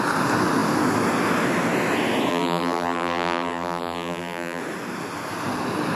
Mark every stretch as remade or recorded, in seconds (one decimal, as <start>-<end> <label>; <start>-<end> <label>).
0.0-2.3 recorded; 2.3-4.6 remade; 4.6-6.0 recorded